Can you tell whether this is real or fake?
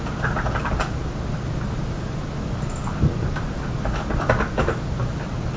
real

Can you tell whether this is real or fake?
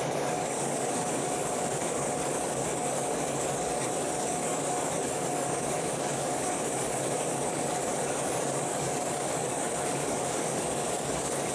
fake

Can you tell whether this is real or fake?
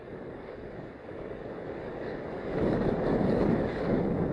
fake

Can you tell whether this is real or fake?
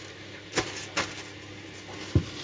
real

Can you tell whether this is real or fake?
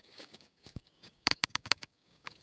fake